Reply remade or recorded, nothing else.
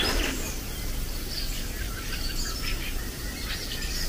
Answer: recorded